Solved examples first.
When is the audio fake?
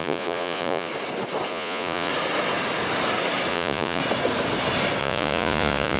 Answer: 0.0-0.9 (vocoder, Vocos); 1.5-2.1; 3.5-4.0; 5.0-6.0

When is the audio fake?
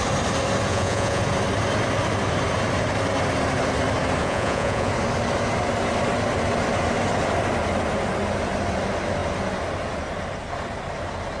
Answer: 0.7-1.2 (vocoder, Vocos); 4.2-4.9